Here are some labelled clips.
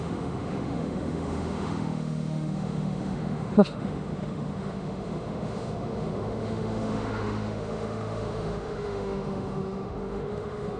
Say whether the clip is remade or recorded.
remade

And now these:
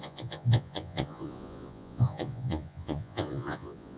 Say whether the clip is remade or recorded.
remade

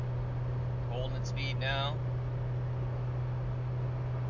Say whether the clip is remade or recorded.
recorded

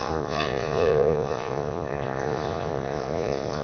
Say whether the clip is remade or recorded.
remade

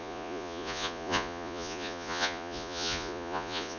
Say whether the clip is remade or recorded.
remade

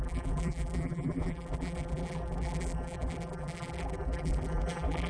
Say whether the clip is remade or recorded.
remade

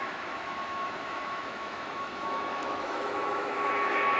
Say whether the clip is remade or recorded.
remade